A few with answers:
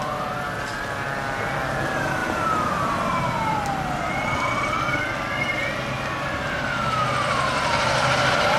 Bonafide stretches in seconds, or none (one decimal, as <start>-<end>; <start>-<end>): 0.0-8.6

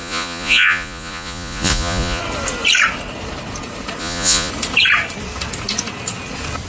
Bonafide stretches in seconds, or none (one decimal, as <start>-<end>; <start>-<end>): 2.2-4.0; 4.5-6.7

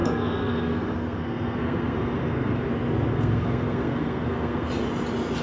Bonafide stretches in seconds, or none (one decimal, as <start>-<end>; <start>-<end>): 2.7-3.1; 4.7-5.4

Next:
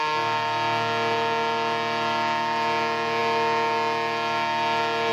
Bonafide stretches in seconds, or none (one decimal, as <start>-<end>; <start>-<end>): 0.0-5.1